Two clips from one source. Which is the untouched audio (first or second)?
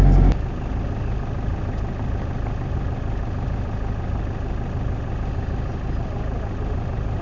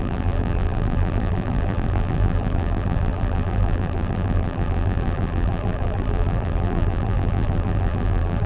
first